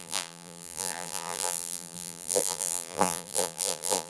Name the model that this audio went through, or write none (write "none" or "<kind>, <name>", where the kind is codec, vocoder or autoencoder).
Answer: vocoder, BigVGAN v2